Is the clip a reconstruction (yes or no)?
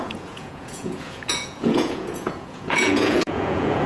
yes